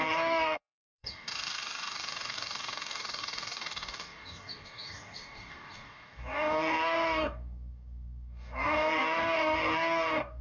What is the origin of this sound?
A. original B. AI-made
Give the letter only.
B